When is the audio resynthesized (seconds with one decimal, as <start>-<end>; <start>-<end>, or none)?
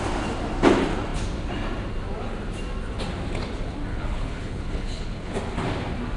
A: 3.9-5.3